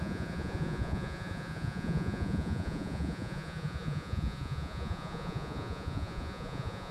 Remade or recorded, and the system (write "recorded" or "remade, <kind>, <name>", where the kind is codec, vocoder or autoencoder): remade, vocoder, Vocos